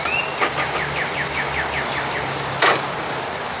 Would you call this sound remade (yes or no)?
no